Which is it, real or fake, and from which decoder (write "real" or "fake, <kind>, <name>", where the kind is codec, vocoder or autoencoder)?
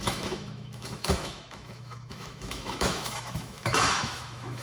fake, autoencoder, DAC-VAE